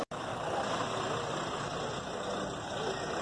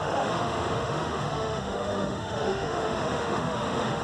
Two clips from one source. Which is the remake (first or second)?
second